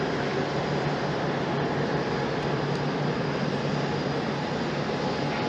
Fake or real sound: real